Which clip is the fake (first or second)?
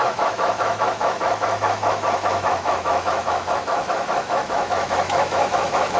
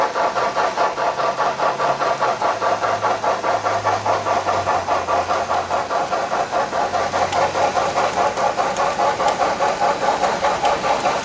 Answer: first